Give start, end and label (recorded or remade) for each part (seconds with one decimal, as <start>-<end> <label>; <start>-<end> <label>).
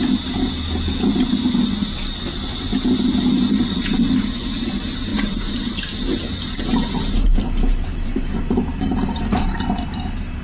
0.0-5.1 recorded; 5.1-5.8 remade; 5.8-7.7 recorded; 7.7-10.4 remade